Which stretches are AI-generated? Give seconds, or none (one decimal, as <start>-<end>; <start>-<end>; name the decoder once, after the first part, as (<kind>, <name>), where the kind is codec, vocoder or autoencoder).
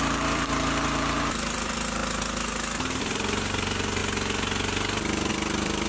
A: 0.0-2.0 (vocoder, BigVGAN v2); 3.0-4.0; 5.3-5.9